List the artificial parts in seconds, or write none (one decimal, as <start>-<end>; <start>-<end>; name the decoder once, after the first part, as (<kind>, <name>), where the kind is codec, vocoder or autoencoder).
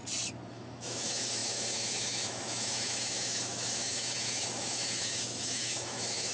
0.5-6.3 (autoencoder, DAC-VAE)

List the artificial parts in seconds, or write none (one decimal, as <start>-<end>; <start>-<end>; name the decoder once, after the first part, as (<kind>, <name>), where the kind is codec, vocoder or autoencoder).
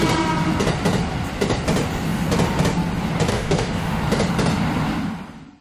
3.3-4.0 (autoencoder, DAC-VAE)